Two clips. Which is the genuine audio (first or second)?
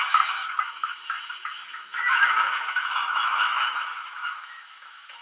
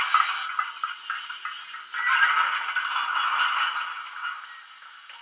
second